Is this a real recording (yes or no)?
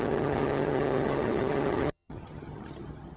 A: no